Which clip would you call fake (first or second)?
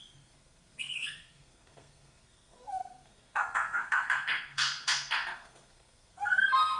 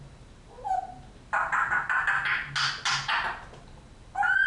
first